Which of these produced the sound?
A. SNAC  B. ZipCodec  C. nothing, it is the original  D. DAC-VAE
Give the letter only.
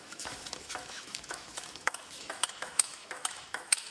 D